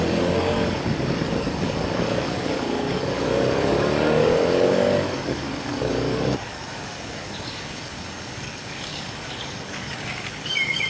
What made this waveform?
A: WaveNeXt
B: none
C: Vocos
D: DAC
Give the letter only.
D